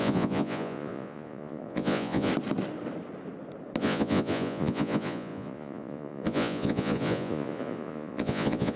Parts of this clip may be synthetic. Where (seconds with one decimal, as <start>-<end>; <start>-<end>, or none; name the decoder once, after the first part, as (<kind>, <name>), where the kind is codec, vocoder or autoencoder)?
0.0-2.3 (vocoder, Vocos); 3.8-8.8